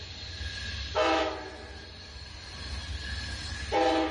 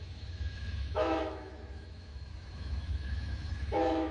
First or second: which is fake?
second